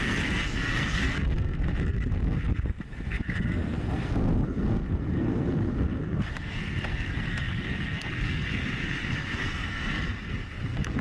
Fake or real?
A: fake